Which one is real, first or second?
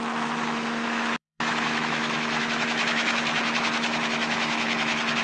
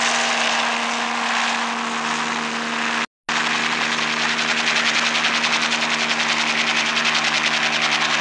second